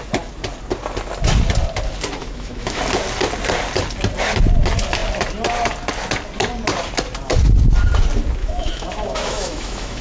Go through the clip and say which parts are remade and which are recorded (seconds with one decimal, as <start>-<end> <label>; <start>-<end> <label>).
0.0-2.2 recorded; 2.2-2.8 remade; 2.8-8.4 recorded; 8.4-10.0 remade

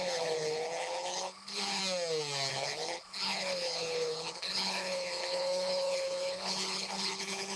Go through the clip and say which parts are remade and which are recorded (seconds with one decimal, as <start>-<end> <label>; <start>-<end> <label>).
0.0-1.8 remade; 1.8-2.5 recorded; 2.5-7.6 remade